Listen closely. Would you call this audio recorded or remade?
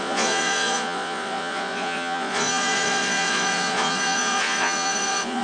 remade